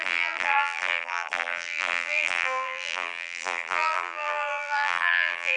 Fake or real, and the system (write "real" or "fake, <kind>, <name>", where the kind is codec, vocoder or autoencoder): fake, vocoder, BigVGAN v2